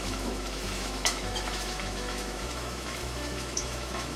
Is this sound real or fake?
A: fake